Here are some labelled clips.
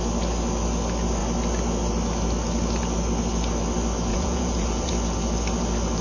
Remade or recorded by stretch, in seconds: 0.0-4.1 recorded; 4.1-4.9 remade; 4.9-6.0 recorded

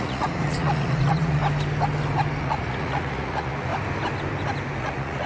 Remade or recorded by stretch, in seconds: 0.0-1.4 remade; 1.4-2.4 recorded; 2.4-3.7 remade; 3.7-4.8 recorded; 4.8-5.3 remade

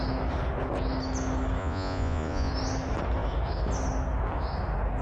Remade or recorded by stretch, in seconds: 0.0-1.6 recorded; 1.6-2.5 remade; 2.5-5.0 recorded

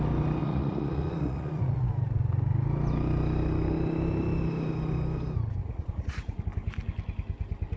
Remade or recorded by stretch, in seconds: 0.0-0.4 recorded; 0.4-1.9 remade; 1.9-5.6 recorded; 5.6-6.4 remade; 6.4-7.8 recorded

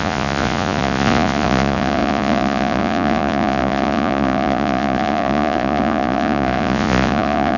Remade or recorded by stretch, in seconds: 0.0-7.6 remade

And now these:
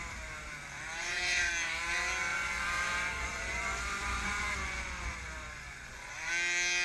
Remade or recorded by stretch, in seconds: 0.0-1.0 recorded; 1.0-1.5 remade; 1.5-2.3 recorded; 2.3-6.3 remade; 6.3-6.8 recorded

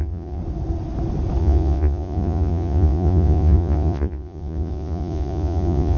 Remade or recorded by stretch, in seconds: 0.0-0.4 remade; 0.4-1.4 recorded; 1.4-6.0 remade